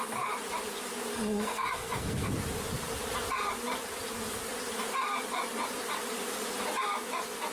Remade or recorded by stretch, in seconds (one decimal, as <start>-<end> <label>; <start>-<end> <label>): 0.0-1.1 recorded; 1.1-2.3 remade; 2.3-7.5 recorded